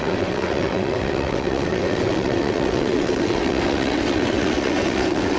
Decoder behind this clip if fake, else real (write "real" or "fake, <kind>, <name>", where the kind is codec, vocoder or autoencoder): fake, vocoder, WaveNeXt